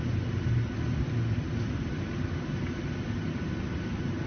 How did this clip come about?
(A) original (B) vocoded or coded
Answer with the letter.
A